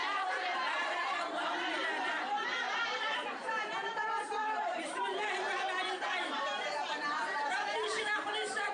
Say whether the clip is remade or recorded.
remade